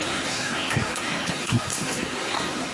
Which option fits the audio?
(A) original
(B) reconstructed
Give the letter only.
B